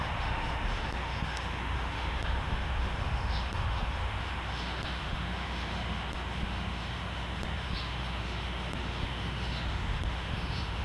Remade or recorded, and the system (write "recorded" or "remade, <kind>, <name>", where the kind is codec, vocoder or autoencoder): remade, autoencoder, DAC-VAE